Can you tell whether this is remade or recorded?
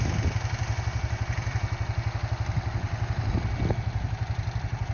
recorded